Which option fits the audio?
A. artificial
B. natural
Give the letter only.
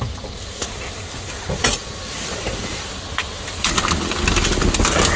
B